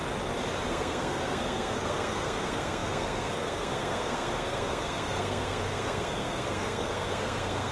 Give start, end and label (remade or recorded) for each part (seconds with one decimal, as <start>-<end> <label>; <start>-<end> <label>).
0.0-0.7 recorded; 0.7-7.7 remade